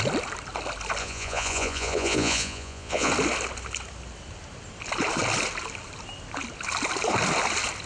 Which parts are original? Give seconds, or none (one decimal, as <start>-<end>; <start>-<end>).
0.0-1.0; 3.1-7.9